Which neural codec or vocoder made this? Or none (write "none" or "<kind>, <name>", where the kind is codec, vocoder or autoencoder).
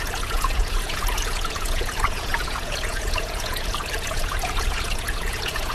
vocoder, Vocos